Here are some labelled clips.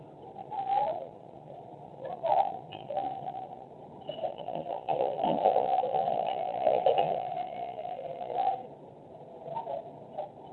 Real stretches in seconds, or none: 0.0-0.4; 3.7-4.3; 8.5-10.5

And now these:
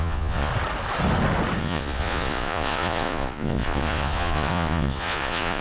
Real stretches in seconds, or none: 0.5-1.6

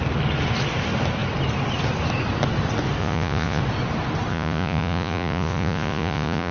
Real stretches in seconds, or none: 0.0-3.0; 3.6-4.3

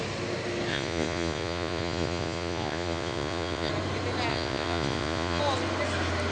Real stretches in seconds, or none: 0.0-0.7; 3.7-4.3; 5.4-6.3

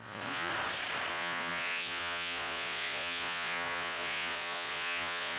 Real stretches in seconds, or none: 0.5-1.1

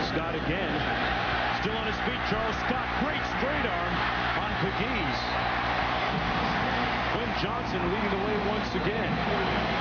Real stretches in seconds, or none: 0.0-9.8

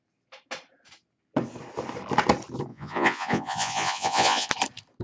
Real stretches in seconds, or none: 0.0-2.7; 4.5-5.0

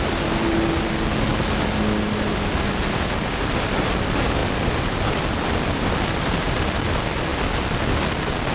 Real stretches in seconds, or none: 0.0-8.5